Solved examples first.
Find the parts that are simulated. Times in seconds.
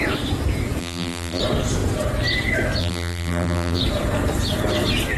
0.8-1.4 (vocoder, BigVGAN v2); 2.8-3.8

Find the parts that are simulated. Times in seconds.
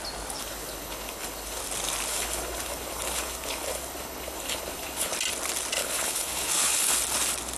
0.4-1.6 (codec, HILCodec); 2.1-5.1; 5.8-7.0